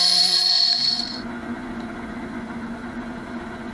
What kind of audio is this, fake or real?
fake